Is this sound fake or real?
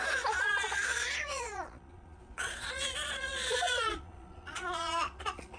fake